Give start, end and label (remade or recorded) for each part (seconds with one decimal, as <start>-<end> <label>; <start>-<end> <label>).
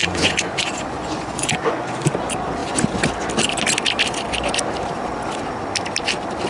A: 0.0-2.1 remade; 2.1-6.5 recorded